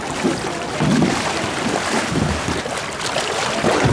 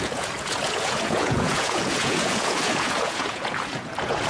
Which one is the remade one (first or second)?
second